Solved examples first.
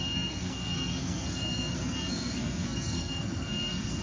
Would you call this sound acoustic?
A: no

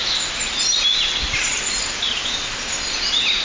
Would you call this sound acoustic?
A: yes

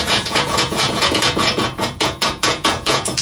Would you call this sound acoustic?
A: no